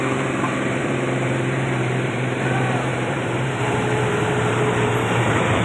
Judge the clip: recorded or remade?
remade